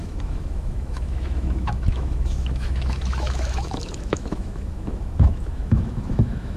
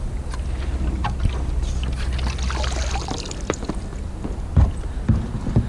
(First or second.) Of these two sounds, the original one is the second